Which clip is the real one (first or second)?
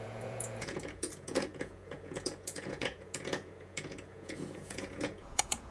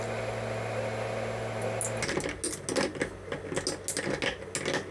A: second